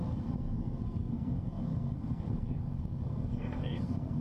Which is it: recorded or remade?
remade